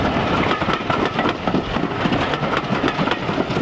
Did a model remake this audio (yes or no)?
no